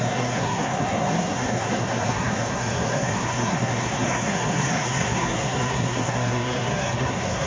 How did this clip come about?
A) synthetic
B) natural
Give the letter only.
A